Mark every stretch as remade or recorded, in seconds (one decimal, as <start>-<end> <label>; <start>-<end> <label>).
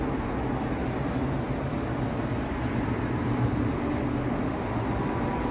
0.0-4.1 recorded; 4.1-4.8 remade; 4.8-5.5 recorded